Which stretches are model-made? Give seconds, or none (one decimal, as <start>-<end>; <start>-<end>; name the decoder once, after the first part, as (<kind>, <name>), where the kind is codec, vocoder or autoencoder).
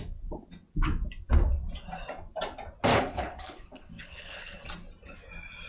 2.9-4.6 (codec, HILCodec)